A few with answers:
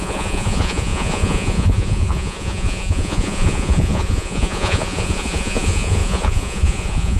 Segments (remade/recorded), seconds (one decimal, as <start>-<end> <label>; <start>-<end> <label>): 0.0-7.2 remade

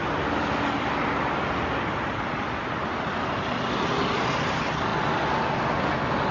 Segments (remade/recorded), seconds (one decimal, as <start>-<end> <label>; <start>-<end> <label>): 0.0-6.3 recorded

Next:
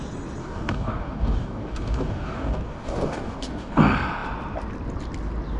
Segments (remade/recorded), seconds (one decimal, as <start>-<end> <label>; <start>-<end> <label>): 0.0-0.4 recorded; 0.4-3.8 remade; 3.8-5.6 recorded

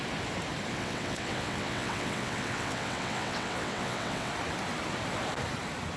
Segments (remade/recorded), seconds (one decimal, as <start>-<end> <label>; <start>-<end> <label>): 0.0-0.7 recorded; 0.7-4.3 remade; 4.3-6.0 recorded

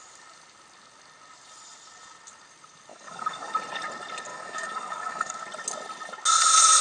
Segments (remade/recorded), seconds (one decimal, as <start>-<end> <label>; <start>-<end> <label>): 0.0-2.9 recorded; 2.9-3.5 remade; 3.5-4.3 recorded; 4.3-5.4 remade; 5.4-6.8 recorded

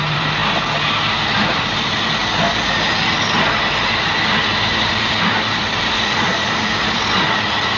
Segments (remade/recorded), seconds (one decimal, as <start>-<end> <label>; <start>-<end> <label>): 0.0-0.4 remade; 0.4-1.3 recorded; 1.3-2.2 remade; 2.2-4.7 recorded; 4.7-7.8 remade

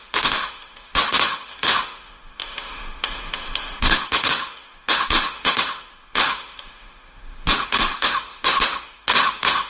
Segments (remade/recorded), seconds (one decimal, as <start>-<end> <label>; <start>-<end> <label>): 0.0-9.7 remade